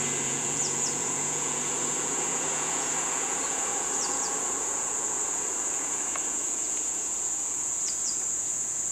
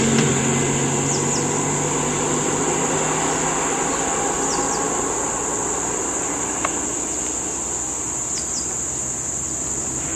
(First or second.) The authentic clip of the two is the second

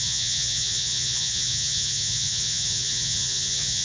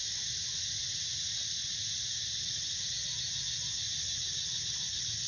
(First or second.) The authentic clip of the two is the second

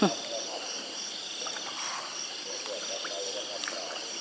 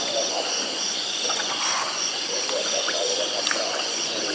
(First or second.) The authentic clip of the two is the first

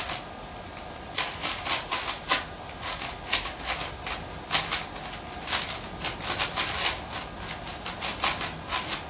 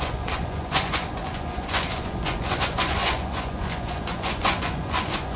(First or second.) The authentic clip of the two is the first